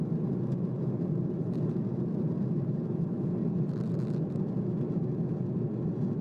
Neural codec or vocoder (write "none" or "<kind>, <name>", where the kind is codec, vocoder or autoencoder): none